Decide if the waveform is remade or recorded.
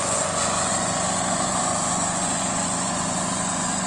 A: remade